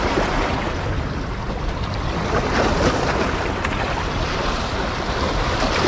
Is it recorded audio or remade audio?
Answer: remade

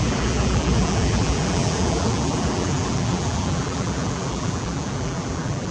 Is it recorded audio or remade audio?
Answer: remade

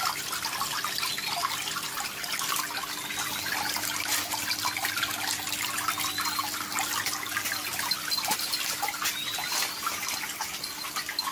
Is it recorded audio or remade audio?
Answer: recorded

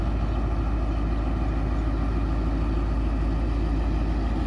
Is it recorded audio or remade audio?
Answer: recorded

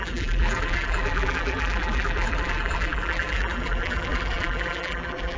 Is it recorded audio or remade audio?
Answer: remade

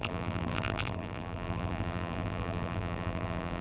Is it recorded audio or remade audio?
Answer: remade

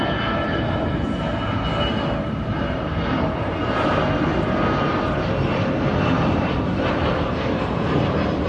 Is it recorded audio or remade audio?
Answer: remade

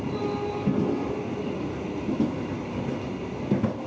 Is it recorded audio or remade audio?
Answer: recorded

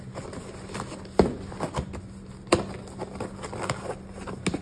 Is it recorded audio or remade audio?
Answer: recorded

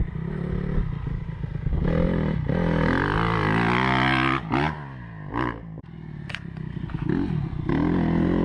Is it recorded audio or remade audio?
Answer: recorded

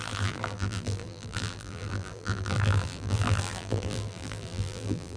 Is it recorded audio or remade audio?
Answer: remade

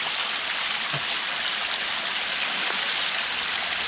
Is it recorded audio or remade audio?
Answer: recorded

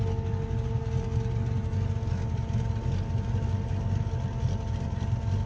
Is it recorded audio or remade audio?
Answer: recorded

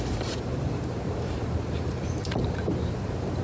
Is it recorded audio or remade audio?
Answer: remade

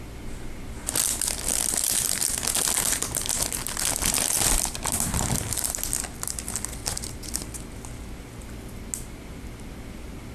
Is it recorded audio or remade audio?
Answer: recorded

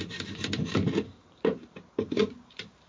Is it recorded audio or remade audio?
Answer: remade